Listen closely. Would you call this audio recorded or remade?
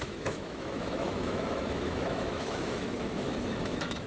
remade